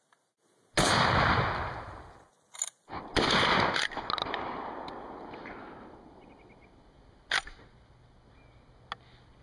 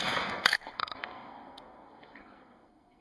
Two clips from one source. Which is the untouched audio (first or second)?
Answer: first